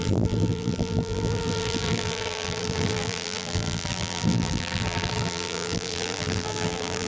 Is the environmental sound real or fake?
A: fake